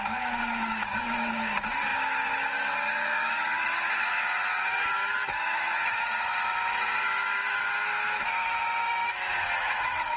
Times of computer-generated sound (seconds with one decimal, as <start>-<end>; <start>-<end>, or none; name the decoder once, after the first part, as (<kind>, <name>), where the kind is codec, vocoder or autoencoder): 0.0-10.2 (autoencoder, DAC-VAE)